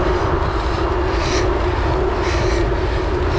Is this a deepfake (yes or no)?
no